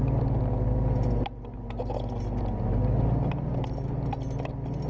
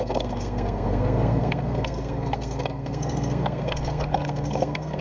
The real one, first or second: first